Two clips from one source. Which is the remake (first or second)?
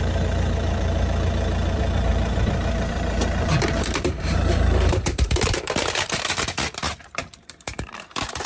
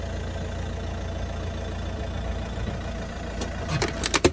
first